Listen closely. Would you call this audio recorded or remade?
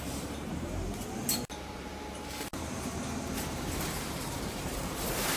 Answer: remade